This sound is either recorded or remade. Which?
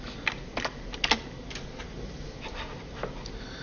recorded